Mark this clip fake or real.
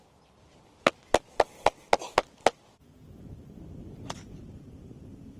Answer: real